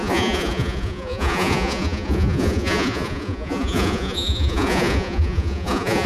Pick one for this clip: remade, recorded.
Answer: remade